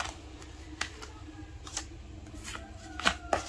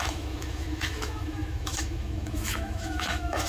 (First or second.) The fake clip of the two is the second